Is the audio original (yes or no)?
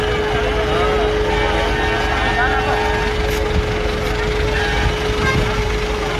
yes